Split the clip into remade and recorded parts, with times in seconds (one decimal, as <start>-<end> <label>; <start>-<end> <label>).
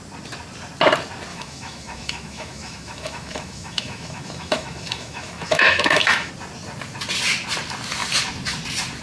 0.0-1.3 recorded; 1.3-6.3 remade; 6.3-9.0 recorded